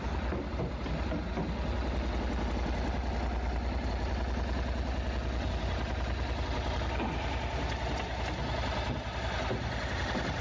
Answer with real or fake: real